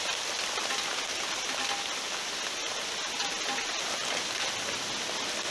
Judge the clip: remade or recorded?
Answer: recorded